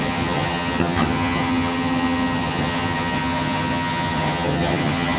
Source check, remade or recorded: remade